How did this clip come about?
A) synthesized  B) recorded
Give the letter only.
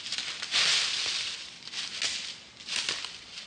B